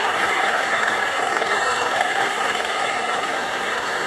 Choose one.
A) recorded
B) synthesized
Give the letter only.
B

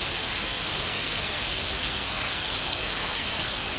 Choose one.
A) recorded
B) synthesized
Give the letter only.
B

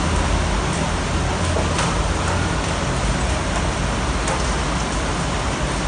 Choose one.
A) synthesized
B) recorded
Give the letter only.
B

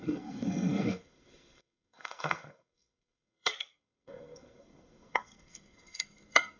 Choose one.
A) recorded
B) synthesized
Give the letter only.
B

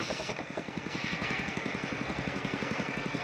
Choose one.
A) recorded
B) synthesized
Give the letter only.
B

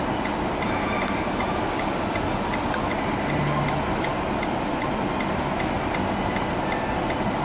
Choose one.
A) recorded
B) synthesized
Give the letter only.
A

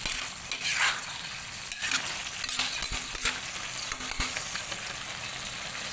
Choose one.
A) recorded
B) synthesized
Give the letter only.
A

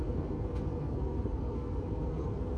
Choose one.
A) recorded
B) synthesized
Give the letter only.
B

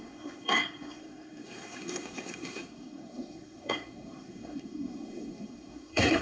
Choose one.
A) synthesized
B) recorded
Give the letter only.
A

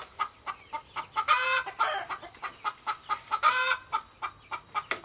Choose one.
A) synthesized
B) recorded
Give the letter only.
B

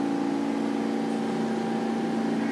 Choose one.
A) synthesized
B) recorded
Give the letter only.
B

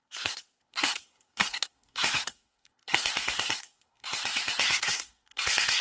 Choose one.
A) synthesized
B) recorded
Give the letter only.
A